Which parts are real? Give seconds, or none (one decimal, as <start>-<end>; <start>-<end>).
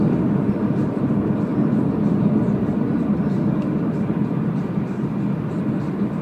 0.0-6.2